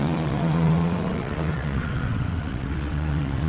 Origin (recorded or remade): remade